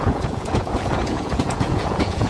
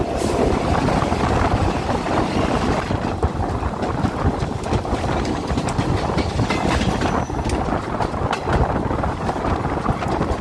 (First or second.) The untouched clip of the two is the second